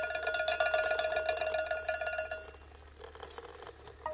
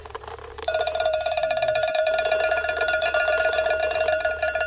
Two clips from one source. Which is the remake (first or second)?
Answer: second